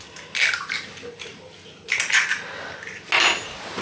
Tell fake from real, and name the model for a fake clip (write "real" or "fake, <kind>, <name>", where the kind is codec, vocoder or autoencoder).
real